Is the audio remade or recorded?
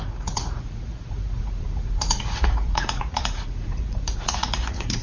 remade